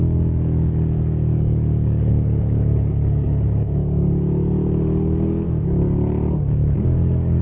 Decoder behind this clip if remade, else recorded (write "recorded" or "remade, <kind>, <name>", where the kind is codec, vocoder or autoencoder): remade, codec, DAC